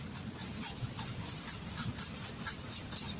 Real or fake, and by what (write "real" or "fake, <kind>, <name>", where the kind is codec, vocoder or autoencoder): fake, vocoder, BigVGAN v2